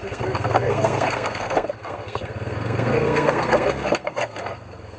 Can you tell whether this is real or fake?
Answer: fake